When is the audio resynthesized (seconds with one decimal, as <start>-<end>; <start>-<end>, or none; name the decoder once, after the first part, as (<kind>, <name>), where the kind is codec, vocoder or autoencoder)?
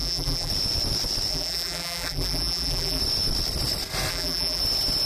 0.0-0.5 (vocoder, BigVGAN v2); 1.3-3.0; 4.1-4.6